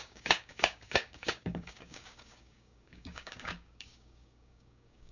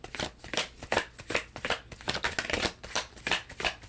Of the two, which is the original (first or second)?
second